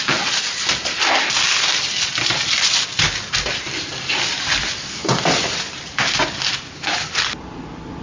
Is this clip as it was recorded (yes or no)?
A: yes